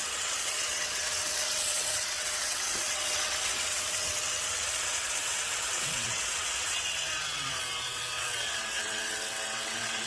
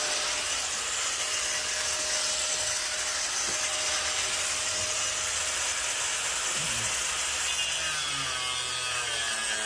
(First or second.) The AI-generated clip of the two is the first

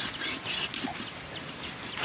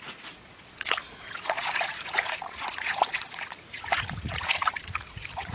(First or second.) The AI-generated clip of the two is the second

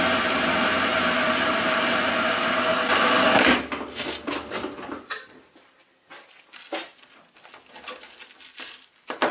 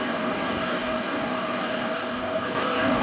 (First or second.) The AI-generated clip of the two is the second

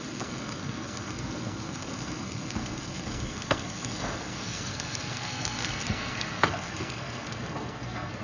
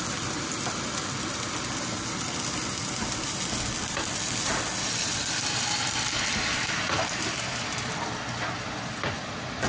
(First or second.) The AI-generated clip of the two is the first